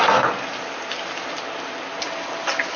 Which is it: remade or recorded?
recorded